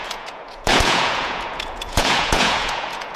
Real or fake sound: fake